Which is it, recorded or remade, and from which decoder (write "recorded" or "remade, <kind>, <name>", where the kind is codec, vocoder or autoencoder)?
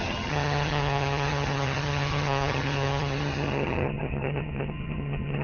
remade, vocoder, HiFi-GAN